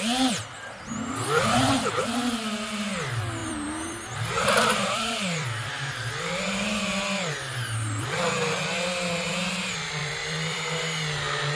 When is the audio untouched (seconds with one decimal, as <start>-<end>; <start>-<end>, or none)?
0.0-3.4; 5.9-10.0; 10.6-11.6